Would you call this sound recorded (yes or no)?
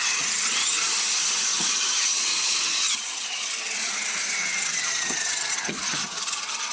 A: no